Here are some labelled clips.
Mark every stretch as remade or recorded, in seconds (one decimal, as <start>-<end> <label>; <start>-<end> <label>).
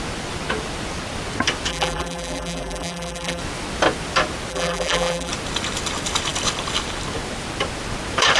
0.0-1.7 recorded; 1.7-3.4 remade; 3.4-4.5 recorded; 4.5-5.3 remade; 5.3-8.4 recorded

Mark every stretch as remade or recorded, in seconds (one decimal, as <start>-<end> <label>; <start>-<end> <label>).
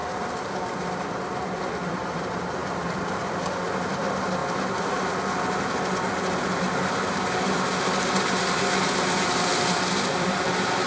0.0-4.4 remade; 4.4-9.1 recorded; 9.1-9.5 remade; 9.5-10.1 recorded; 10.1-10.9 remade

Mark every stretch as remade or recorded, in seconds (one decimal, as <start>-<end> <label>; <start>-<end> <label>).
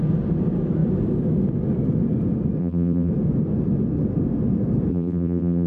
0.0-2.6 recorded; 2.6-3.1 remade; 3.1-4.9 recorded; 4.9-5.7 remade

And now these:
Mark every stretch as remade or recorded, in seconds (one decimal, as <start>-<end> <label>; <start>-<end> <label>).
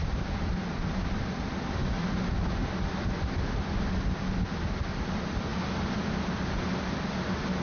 0.0-1.1 remade; 1.1-1.8 recorded; 1.8-2.9 remade; 2.9-7.6 recorded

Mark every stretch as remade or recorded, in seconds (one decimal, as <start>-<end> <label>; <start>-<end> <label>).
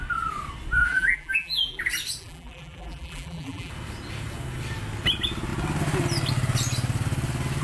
0.0-0.8 recorded; 0.8-1.8 remade; 1.8-2.2 recorded; 2.2-3.7 remade; 3.7-7.6 recorded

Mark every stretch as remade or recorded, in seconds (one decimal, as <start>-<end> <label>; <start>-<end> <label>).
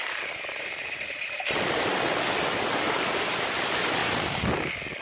0.0-1.9 remade; 1.9-3.3 recorded; 3.3-4.0 remade; 4.0-5.0 recorded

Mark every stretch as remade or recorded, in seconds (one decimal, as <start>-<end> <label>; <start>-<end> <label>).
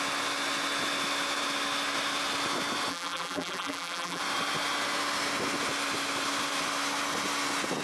0.0-2.9 recorded; 2.9-4.2 remade; 4.2-7.8 recorded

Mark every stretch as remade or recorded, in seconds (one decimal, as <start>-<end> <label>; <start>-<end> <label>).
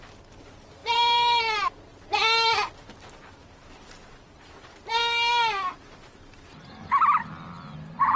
0.0-0.8 recorded; 0.8-1.4 remade; 1.4-6.5 recorded; 6.5-7.2 remade; 7.2-8.2 recorded